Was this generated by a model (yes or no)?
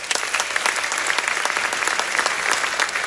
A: no